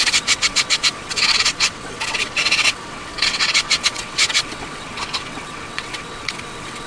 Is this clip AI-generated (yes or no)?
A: yes